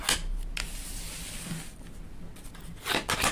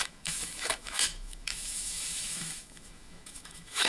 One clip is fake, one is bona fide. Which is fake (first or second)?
second